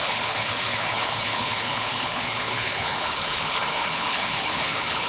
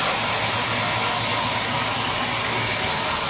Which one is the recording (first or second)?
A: second